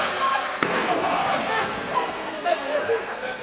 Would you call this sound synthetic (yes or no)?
yes